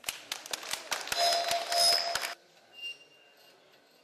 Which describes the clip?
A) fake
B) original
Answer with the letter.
B